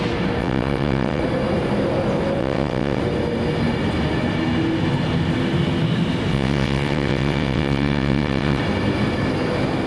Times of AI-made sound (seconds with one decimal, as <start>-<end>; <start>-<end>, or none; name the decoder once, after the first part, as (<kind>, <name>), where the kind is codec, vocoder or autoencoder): 0.4-1.2 (vocoder, WaveNeXt); 2.4-3.0; 6.3-8.6